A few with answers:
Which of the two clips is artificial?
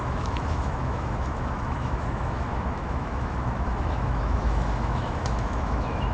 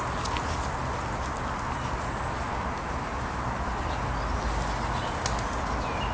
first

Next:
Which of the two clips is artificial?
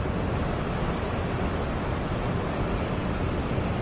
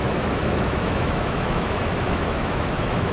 second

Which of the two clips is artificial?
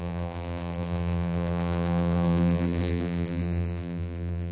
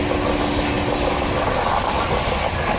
first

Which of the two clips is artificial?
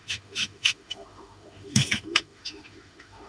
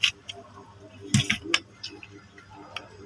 first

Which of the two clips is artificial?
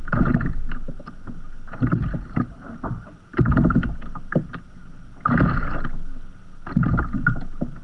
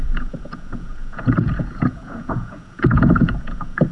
second